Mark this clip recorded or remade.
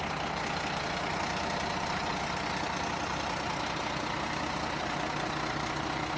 recorded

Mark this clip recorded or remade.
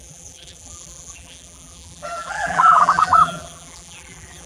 remade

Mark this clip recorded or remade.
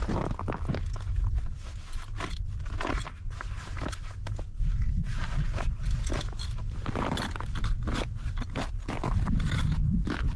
recorded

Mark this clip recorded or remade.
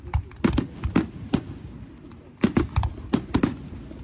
recorded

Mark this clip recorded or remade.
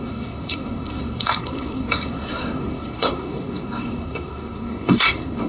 remade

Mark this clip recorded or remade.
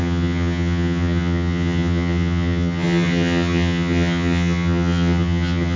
remade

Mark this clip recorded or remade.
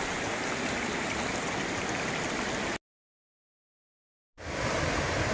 recorded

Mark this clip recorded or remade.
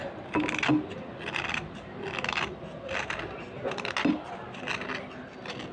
recorded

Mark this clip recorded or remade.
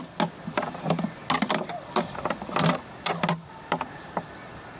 recorded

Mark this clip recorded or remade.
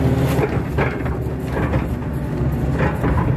recorded